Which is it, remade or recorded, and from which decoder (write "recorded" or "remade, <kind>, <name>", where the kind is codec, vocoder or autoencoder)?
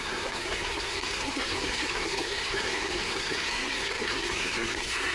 remade, codec, SNAC